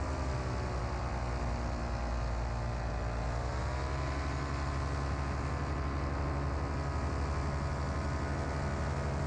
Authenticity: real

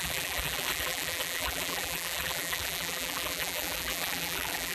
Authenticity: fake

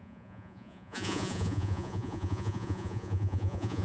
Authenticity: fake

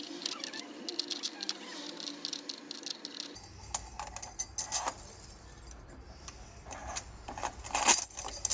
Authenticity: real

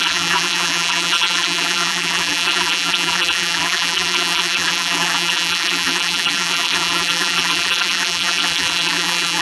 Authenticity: fake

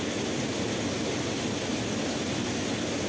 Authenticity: real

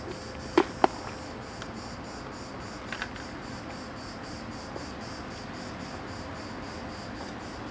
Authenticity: real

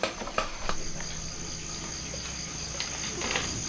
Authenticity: real